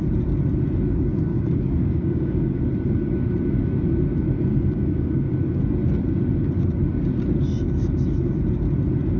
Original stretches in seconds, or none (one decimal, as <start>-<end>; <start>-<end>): 0.0-1.3; 2.6-4.5; 5.3-9.2